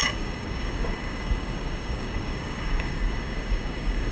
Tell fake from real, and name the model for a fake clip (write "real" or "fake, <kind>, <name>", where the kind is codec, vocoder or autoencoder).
fake, codec, DAC